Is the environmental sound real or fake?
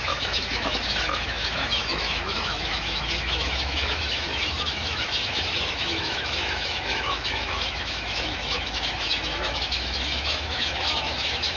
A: fake